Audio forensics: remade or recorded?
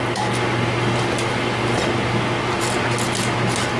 recorded